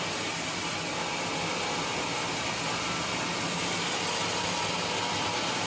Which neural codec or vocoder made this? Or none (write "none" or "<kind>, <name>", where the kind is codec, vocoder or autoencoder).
none